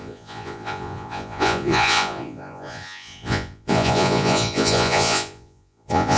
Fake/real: fake